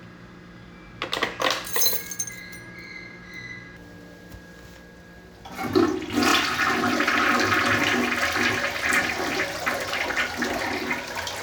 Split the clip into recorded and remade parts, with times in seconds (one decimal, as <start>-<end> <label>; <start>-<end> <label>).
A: 0.0-11.4 recorded